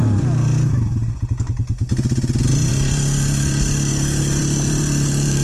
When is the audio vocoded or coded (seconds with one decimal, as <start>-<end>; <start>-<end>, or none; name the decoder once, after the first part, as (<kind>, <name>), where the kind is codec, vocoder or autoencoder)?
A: 2.7-3.9 (vocoder, BigVGAN v2); 4.4-5.4